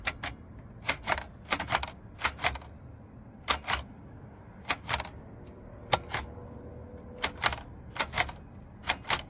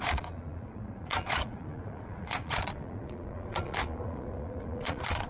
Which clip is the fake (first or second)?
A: second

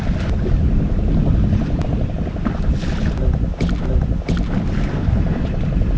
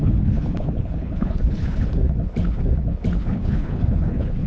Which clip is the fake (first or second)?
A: second